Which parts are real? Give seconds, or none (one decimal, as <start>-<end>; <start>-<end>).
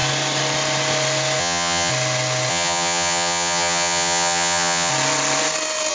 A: 0.0-1.4; 1.9-2.5; 4.9-5.9